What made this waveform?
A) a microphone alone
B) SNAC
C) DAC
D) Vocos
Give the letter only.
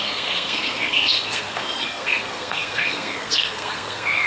B